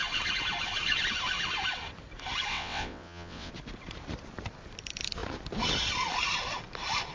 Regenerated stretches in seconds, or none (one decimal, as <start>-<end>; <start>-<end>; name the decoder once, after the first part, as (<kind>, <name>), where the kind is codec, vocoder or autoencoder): 2.5-3.5 (vocoder, WaveNeXt)